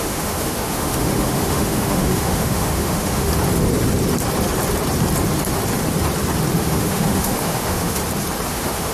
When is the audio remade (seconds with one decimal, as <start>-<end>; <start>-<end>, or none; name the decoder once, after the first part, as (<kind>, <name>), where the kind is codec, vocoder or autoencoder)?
0.0-3.3 (autoencoder, DAC-VAE); 6.6-8.0; 8.5-8.9